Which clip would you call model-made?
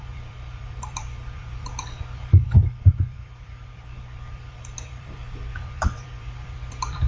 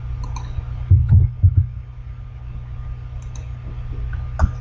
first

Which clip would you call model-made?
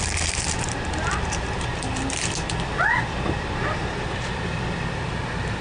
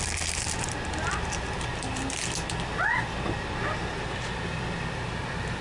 first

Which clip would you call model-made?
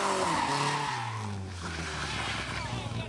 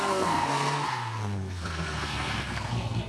second